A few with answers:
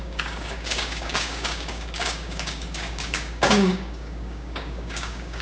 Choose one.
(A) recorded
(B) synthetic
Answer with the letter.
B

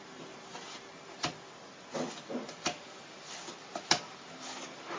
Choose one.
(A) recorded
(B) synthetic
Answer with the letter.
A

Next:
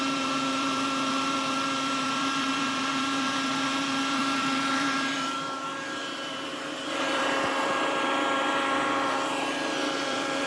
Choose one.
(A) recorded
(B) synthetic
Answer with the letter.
B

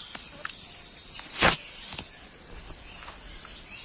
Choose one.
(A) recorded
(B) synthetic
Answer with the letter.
A